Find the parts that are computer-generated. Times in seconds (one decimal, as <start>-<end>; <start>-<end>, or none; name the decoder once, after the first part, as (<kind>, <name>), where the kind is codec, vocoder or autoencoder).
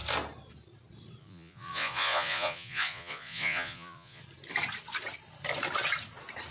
1.2-4.2 (vocoder, Vocos)